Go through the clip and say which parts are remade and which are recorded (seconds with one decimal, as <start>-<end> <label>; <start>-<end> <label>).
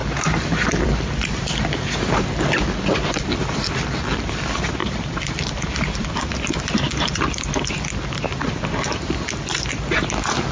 0.0-4.0 remade; 4.0-4.8 recorded; 4.8-7.8 remade; 7.8-10.5 recorded